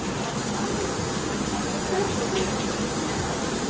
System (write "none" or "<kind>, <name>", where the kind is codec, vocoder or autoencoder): vocoder, BigVGAN v2